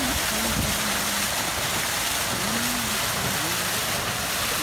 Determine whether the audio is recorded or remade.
recorded